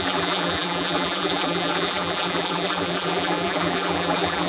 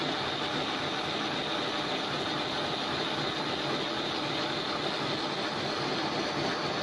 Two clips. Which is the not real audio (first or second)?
first